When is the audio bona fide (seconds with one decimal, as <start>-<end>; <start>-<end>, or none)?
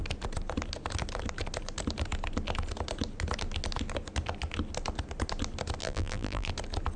0.0-5.8; 6.5-7.0